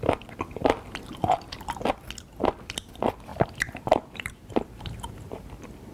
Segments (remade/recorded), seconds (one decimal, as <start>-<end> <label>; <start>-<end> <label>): 0.0-3.3 recorded; 3.3-5.5 remade; 5.5-5.9 recorded